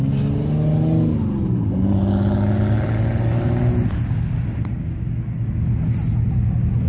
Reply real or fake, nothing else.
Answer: real